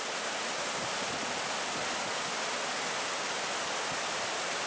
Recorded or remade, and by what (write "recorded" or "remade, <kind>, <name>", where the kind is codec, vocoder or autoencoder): recorded